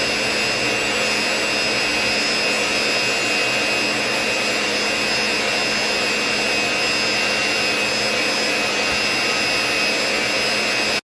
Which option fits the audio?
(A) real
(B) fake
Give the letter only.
A